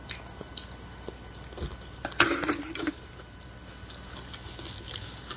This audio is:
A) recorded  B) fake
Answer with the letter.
A